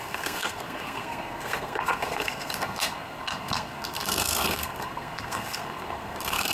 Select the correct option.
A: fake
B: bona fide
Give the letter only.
A